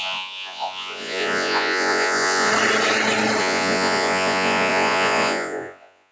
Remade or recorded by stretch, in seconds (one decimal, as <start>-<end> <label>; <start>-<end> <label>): 0.0-2.5 remade; 2.5-3.4 recorded; 3.4-6.1 remade